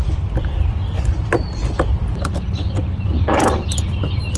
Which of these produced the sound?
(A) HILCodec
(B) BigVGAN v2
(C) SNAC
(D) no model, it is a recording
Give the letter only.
B